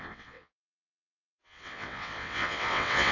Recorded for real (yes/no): no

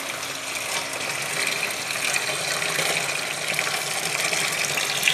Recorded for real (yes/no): yes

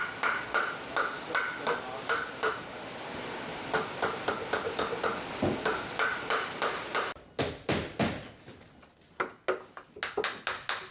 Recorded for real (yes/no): yes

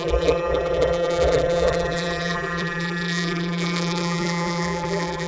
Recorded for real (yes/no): no